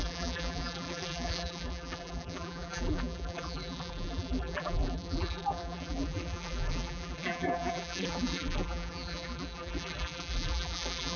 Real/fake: fake